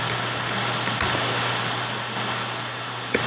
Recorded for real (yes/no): yes